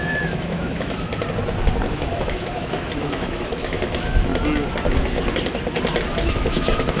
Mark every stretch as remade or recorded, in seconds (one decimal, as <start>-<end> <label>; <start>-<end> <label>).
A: 0.0-1.1 remade; 1.1-1.9 recorded; 1.9-4.3 remade; 4.3-6.3 recorded; 6.3-7.0 remade